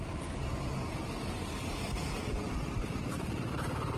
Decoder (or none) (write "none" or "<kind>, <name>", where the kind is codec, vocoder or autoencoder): none